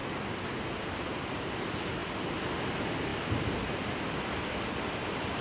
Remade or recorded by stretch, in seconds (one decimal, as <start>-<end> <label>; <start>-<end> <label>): 0.0-5.4 recorded